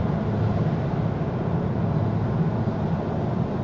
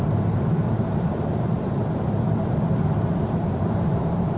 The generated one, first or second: second